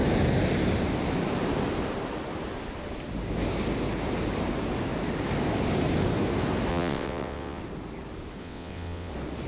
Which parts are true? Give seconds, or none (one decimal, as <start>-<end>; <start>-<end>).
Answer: 0.0-6.7; 7.6-8.4; 9.1-9.5